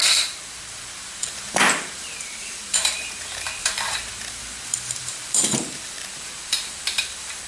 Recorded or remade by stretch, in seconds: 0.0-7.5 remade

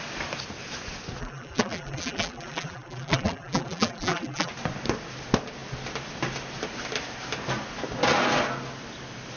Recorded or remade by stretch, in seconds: 0.0-1.2 recorded; 1.2-4.5 remade; 4.5-9.4 recorded